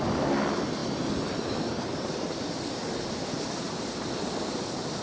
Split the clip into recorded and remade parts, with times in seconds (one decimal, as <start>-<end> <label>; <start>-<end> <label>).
0.0-5.0 recorded